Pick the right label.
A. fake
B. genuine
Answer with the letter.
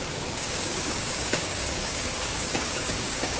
A